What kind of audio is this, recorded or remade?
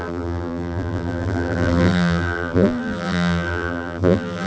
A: remade